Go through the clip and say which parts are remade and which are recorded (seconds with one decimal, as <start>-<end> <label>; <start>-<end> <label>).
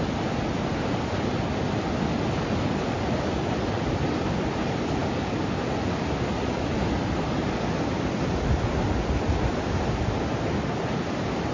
0.0-11.5 recorded